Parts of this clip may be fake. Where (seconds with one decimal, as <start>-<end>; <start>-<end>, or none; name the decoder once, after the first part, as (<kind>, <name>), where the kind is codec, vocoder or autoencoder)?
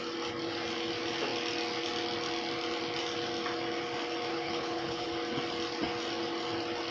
4.3-5.1 (codec, HILCodec)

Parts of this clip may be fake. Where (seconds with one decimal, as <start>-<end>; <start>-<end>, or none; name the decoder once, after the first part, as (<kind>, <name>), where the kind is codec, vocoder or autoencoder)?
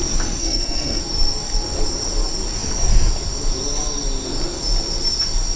0.4-1.0 (codec, SNAC)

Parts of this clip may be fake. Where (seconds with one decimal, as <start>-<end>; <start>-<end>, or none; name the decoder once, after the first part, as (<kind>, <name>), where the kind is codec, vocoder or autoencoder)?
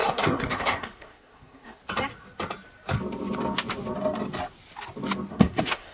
0.0-1.8 (codec, SNAC); 5.3-5.9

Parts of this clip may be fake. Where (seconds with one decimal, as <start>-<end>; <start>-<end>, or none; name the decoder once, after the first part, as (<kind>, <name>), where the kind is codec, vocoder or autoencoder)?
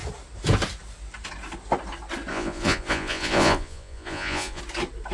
2.3-4.6 (vocoder, Vocos)